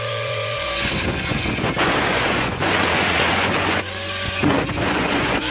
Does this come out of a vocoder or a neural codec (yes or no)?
yes